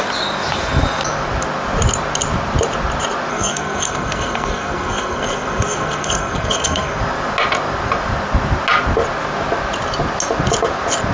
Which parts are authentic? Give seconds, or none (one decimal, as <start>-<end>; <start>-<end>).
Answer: 0.0-3.3; 7.0-11.1